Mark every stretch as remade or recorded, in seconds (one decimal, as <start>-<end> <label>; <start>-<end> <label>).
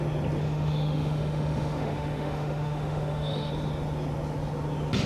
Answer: 0.0-0.4 recorded; 0.4-3.5 remade; 3.5-5.1 recorded